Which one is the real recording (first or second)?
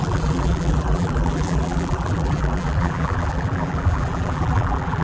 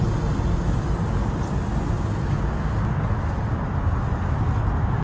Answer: second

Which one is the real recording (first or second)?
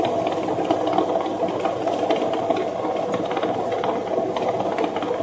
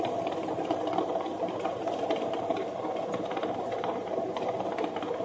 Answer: first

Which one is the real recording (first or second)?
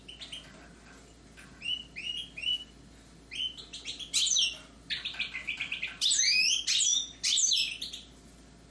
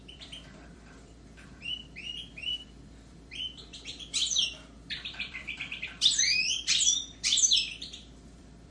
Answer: first